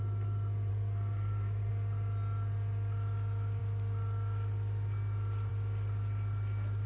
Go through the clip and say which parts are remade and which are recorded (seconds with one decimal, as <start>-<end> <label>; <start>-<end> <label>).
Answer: 0.0-0.7 recorded; 0.7-1.7 remade; 1.7-6.9 recorded